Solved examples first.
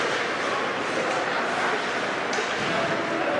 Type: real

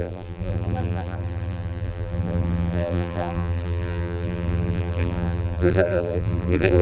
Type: fake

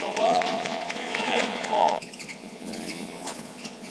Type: fake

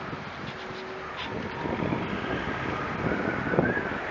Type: real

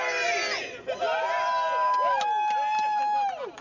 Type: real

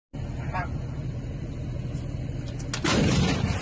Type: real